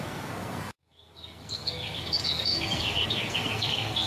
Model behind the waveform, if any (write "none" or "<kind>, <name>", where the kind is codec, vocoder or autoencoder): codec, SNAC